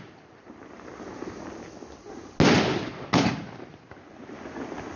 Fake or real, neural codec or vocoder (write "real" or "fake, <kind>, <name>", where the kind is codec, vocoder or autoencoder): real